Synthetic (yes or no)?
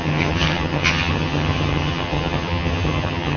yes